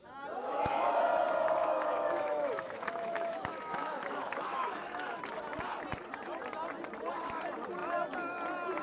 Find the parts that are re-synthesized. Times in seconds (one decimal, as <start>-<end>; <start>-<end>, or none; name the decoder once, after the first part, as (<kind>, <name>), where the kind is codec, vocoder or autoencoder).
0.4-1.0 (autoencoder, DAC-VAE); 1.6-5.2

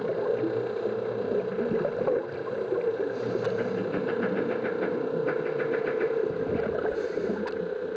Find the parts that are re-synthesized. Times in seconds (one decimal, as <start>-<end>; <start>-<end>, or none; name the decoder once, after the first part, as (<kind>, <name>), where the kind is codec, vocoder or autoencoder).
none

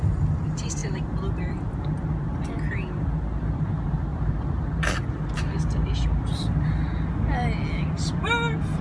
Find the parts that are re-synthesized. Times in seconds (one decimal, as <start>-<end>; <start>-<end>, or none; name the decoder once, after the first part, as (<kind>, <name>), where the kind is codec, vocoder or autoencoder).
none

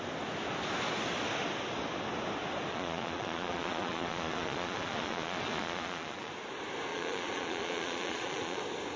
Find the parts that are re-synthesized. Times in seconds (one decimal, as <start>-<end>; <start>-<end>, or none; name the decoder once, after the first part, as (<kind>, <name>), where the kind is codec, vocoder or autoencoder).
2.7-6.3 (vocoder, Vocos); 6.9-8.6

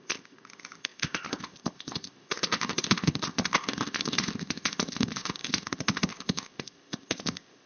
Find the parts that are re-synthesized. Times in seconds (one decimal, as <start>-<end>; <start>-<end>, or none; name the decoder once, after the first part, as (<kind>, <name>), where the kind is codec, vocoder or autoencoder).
0.0-7.7 (codec, ZipCodec)